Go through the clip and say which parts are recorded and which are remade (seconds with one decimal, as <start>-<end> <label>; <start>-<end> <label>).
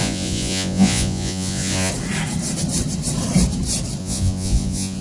0.0-1.9 remade; 1.9-4.0 recorded; 4.0-5.0 remade